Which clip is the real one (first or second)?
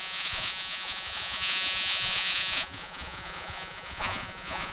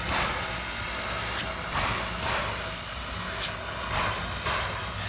second